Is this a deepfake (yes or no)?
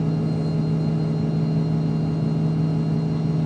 no